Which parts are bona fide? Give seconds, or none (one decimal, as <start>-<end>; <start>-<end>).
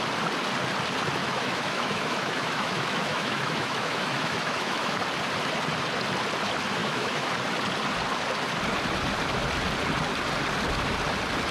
0.0-1.2; 5.0-6.8; 7.3-11.5